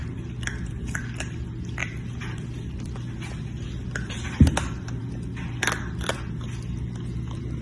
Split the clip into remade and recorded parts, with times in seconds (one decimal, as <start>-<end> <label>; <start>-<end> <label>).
0.0-1.8 recorded; 1.8-5.1 remade; 5.1-7.6 recorded